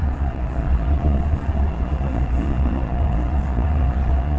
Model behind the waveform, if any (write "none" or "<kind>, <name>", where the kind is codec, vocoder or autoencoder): vocoder, Vocos